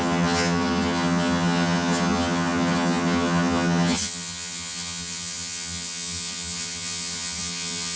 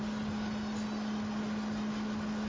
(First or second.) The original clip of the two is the second